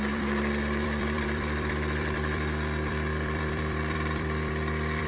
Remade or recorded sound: remade